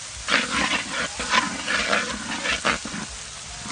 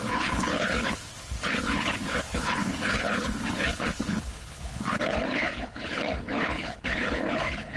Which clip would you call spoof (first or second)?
second